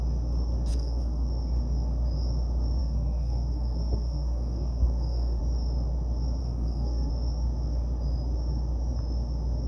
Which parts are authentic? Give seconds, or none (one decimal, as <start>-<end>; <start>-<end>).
0.0-0.7; 1.3-2.8; 5.4-6.4; 7.1-9.7